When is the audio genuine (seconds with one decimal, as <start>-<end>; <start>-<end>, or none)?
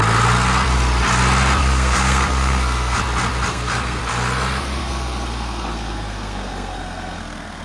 0.0-1.6; 3.0-3.5; 4.0-4.8